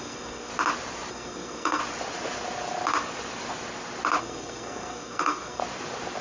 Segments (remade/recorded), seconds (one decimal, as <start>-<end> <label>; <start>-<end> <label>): 0.0-0.5 remade; 0.5-1.1 recorded; 1.1-1.8 remade; 1.8-4.2 recorded; 4.2-5.6 remade; 5.6-6.2 recorded